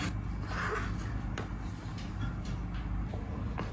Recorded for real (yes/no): yes